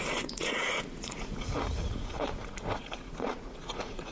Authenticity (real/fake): fake